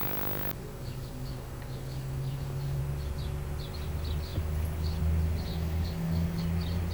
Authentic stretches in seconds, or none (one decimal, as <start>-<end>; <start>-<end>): 2.8-5.5; 6.4-6.9